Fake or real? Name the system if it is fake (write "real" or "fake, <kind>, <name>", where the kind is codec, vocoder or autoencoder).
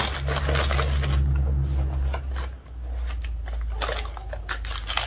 real